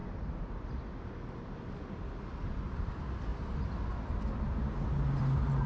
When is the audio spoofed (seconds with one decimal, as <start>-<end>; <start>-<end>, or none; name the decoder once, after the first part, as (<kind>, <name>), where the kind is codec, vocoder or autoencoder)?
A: none